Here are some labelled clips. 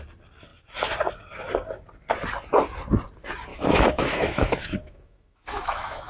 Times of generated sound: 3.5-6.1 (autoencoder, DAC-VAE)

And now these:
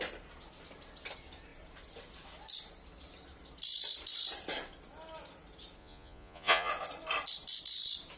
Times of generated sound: 5.8-6.7 (vocoder, Vocos)

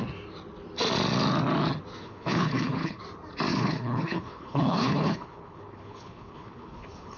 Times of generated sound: 2.0-3.0 (codec, HILCodec); 3.5-7.2

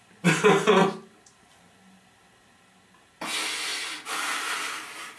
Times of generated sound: 0.8-1.5 (vocoder, BigVGAN v2); 3.7-5.2